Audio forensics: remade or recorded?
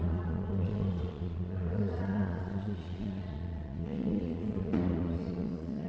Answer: remade